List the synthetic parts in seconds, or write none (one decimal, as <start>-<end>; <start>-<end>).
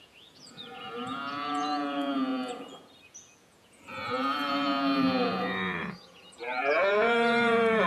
0.0-7.9